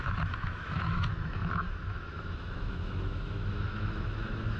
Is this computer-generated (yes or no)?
yes